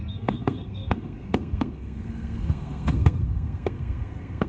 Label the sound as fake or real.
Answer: fake